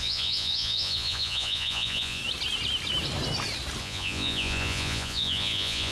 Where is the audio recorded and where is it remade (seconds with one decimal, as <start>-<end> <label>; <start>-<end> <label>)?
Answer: 0.0-2.2 remade; 2.2-3.8 recorded; 3.8-5.9 remade